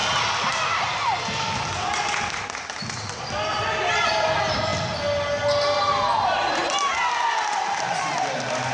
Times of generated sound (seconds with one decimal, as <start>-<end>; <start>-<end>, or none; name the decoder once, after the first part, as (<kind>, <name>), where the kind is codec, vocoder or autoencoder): none